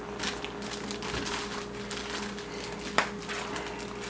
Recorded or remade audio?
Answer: recorded